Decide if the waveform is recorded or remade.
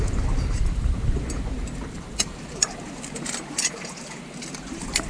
recorded